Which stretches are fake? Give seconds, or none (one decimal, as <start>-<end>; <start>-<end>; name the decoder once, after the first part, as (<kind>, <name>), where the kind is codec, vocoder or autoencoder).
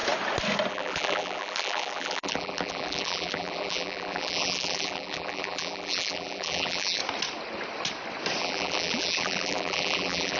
0.7-7.0 (vocoder, BigVGAN v2); 8.4-10.4